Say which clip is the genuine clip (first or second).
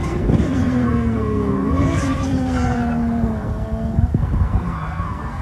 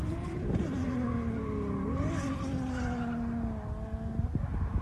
second